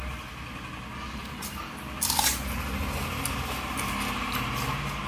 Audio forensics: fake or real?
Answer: real